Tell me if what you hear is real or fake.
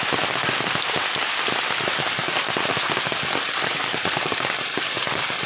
real